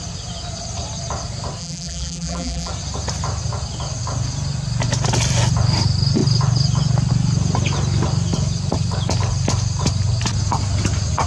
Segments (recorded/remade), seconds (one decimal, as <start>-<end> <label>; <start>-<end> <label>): 0.0-1.6 recorded; 1.6-2.7 remade; 2.7-11.3 recorded